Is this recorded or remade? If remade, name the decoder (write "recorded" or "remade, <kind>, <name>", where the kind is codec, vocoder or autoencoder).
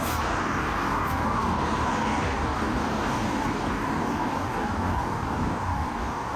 remade, codec, DAC